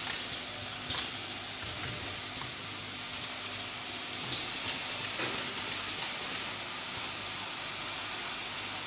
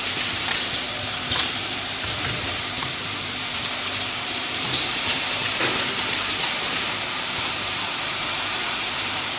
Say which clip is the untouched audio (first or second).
first